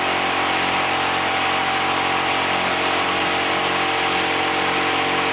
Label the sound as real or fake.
real